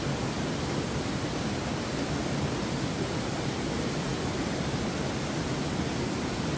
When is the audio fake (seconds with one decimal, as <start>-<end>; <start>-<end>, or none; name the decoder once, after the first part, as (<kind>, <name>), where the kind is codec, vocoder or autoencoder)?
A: none